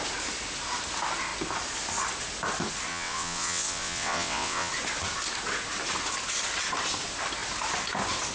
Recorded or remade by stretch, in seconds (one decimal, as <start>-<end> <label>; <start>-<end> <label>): 0.0-2.9 recorded; 2.9-4.7 remade; 4.7-8.3 recorded